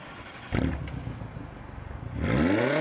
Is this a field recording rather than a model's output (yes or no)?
yes